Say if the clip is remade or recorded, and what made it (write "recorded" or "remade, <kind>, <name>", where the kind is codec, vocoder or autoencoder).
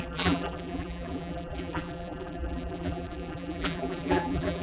remade, vocoder, BigVGAN v2